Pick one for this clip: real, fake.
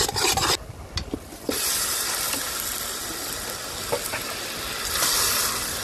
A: real